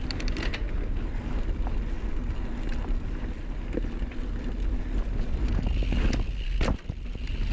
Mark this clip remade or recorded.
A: recorded